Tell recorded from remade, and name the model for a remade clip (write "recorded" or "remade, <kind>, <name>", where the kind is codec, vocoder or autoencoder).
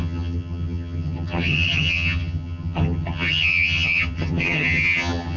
remade, vocoder, HiFi-GAN